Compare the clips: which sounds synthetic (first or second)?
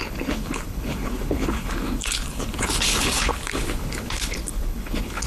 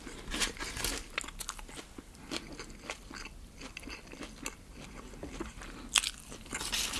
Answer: first